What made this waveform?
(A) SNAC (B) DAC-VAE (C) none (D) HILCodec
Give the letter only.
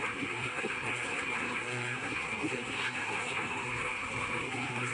A